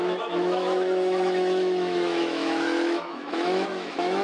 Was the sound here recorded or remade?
remade